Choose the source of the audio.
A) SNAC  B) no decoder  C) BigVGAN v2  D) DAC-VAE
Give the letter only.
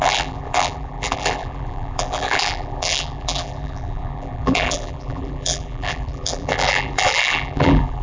C